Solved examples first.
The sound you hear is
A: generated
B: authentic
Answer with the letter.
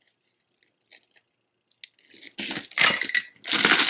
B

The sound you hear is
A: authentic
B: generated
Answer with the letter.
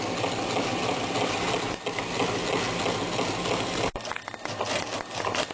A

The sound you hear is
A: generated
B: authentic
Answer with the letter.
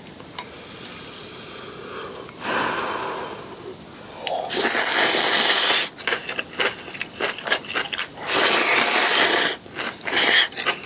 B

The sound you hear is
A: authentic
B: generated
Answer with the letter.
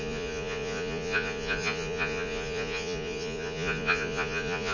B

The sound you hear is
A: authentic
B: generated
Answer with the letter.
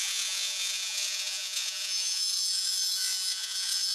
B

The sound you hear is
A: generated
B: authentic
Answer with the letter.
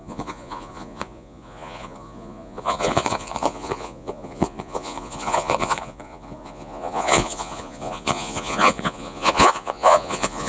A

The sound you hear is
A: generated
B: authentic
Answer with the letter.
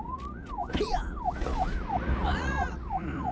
A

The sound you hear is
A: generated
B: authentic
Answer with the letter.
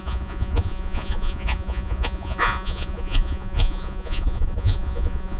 A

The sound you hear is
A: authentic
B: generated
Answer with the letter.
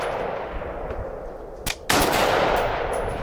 A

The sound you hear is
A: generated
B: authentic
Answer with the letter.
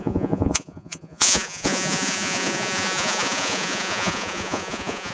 A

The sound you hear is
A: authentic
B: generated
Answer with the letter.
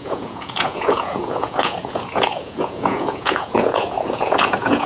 B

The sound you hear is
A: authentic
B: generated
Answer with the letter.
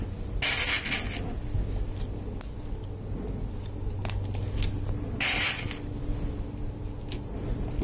A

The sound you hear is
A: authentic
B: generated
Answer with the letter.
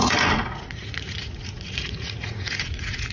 B